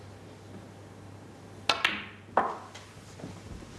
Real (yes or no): yes